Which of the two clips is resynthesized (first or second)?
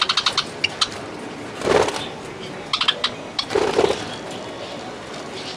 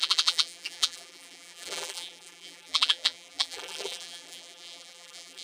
second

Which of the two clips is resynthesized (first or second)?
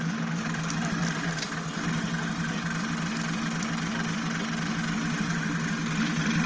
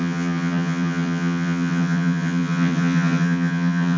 second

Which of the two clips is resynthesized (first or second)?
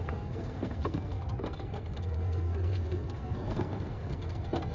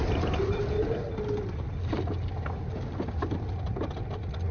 first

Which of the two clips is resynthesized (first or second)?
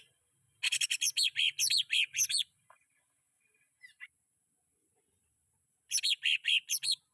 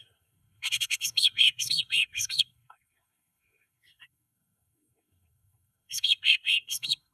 second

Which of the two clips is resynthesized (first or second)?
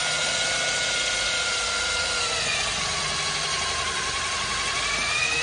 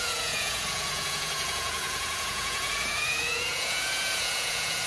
second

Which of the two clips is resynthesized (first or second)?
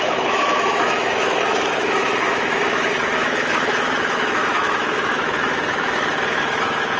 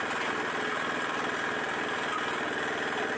first